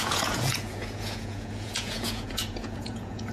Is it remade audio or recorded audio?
remade